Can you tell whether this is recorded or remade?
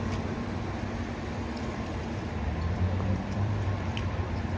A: remade